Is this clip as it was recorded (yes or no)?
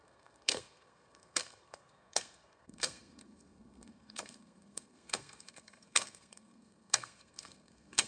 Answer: no